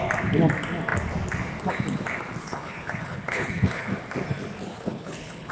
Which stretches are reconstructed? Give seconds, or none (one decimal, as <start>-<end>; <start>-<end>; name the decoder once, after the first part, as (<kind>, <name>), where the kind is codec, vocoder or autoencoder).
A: 2.4-3.9 (codec, HILCodec); 4.7-5.5